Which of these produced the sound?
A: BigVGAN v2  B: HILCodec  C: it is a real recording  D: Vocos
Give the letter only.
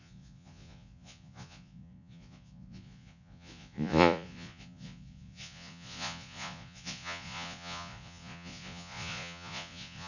D